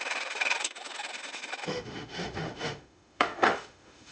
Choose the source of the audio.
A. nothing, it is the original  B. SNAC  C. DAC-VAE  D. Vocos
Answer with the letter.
C